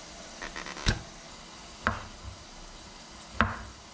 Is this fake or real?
real